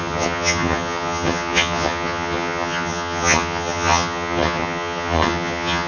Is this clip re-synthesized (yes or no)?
yes